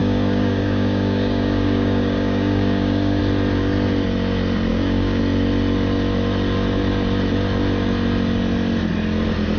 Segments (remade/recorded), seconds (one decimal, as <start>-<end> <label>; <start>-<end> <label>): 0.0-3.2 remade; 3.2-4.7 recorded; 4.7-5.2 remade; 5.2-9.6 recorded